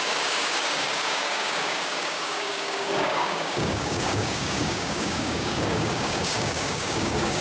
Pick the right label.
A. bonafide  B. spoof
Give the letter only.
B